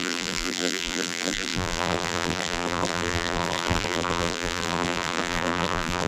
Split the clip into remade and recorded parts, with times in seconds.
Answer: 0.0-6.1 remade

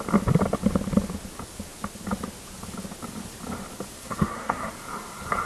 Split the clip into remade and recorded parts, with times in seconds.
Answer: 0.0-4.0 recorded; 4.0-4.7 remade; 4.7-5.5 recorded

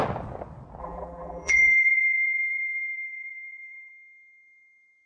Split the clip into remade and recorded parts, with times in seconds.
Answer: 0.0-0.8 recorded; 0.8-3.9 remade; 3.9-5.1 recorded

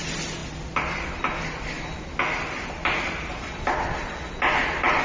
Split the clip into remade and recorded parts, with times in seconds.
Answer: 0.0-5.0 recorded